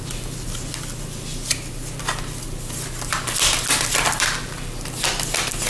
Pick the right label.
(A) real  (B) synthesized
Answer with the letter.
A